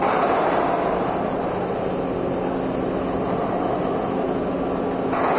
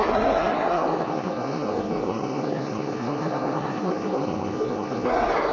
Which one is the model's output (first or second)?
second